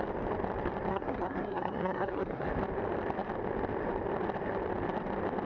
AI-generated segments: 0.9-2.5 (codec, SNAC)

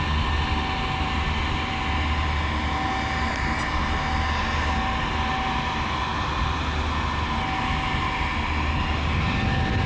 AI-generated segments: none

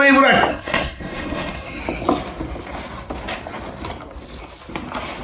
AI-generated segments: 0.5-1.8 (codec, SNAC)

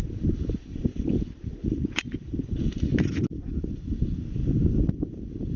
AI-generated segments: none

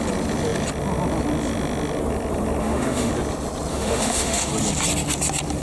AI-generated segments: 2.6-3.1 (autoencoder, DAC-VAE); 3.7-4.5

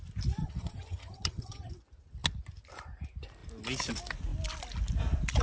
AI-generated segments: 0.4-1.7 (vocoder, HiFi-GAN)